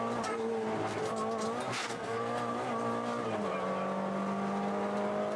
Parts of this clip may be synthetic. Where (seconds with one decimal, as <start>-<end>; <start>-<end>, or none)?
1.7-2.5